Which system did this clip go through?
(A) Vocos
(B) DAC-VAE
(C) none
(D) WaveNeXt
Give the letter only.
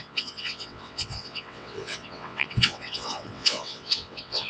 D